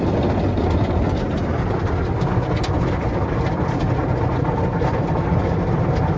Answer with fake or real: real